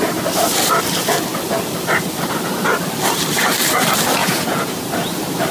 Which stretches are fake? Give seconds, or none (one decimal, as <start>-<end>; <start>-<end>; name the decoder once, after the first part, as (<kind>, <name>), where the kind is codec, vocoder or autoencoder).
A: 4.2-4.9 (vocoder, Vocos)